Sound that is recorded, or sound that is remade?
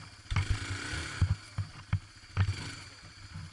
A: recorded